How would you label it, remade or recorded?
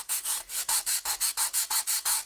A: remade